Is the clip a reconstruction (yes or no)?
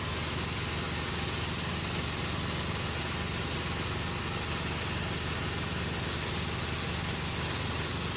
no